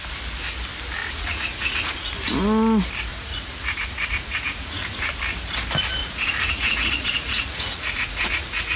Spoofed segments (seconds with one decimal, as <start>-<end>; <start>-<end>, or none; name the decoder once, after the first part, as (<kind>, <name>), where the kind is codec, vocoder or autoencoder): 1.0-2.1 (vocoder, Vocos); 3.1-5.1; 6.0-8.8